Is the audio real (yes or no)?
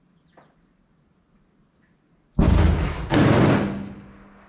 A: yes